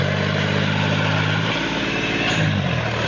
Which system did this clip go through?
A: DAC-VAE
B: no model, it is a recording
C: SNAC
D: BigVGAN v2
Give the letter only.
B